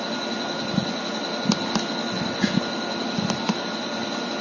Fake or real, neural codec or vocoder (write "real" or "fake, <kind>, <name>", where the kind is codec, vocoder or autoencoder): real